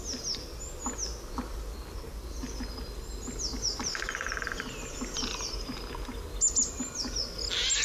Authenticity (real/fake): real